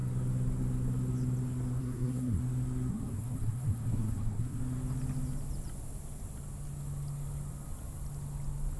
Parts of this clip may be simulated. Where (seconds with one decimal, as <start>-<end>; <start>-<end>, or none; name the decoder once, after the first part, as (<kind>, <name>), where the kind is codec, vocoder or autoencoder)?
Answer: 1.8-2.4 (codec, SNAC); 2.9-4.6